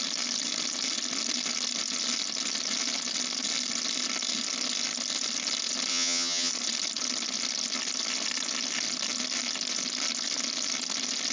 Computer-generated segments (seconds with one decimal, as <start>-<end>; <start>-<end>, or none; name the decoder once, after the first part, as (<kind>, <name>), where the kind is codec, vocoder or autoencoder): 5.9-6.5 (vocoder, HiFi-GAN)